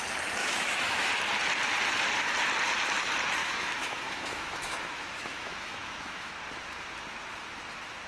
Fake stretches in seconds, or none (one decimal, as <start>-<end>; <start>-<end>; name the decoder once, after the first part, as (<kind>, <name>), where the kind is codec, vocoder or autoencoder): 0.4-1.1 (autoencoder, DAC-VAE); 3.4-6.3